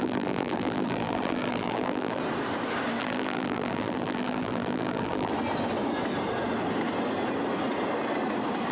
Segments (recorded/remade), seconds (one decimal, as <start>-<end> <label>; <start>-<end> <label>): 0.0-2.2 remade; 2.2-3.0 recorded; 3.0-5.3 remade; 5.3-8.7 recorded